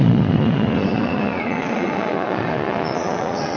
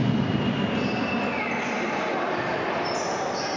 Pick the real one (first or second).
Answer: second